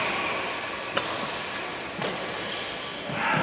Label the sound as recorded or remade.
recorded